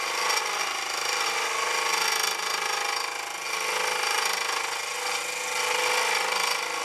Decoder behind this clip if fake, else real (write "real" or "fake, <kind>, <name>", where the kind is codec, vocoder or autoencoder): real